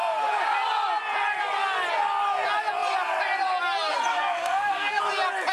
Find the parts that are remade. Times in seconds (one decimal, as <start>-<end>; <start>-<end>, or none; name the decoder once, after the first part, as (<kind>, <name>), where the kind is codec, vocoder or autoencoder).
4.1-5.0 (codec, SNAC)